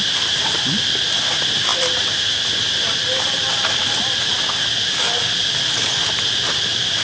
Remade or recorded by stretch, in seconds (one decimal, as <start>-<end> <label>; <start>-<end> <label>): 0.0-7.0 recorded